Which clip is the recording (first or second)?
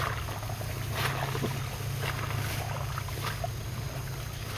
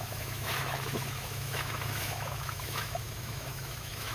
first